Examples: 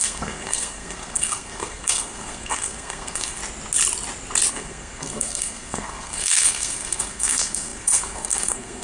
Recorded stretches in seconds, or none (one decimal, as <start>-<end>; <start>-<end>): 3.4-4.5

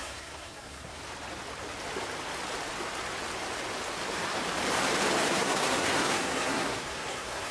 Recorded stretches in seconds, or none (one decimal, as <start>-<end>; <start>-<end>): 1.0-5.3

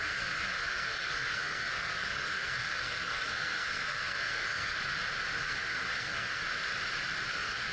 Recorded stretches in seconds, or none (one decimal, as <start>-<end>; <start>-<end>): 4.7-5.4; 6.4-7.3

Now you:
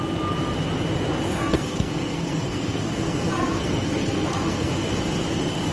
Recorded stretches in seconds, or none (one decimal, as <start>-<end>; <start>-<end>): 0.0-1.3; 4.7-5.7

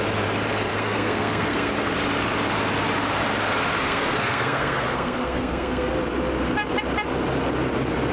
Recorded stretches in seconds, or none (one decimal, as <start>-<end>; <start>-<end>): 0.0-0.7; 1.9-3.7; 5.9-8.1

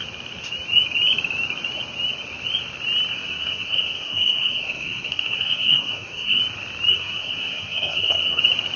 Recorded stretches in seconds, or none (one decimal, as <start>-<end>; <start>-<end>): 0.0-3.1; 6.4-6.9; 8.4-8.8

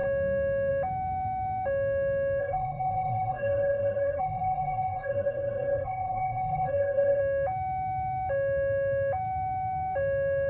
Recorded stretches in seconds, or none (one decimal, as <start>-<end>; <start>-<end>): 0.0-2.4; 7.2-10.5

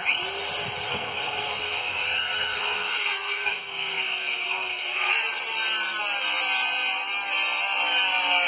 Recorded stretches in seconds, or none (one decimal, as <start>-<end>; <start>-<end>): 0.0-0.9; 5.2-8.5